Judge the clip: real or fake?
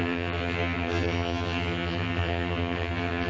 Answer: fake